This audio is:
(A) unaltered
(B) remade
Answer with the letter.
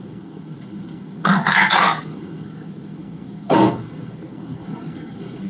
B